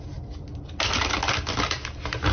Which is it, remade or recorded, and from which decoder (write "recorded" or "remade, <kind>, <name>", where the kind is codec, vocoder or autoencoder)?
recorded